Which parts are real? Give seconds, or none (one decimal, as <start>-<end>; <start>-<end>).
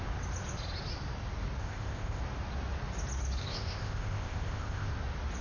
0.0-1.6; 2.2-3.4; 4.9-5.4